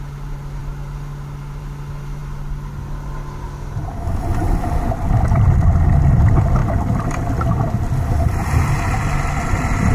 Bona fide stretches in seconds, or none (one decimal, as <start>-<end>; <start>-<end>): 0.0-9.9